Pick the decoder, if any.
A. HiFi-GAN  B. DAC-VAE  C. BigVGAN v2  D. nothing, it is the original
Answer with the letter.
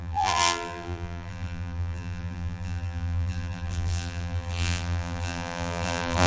C